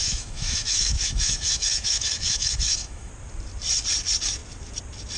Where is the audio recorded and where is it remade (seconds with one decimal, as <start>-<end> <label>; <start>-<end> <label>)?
0.0-3.1 remade; 3.1-5.2 recorded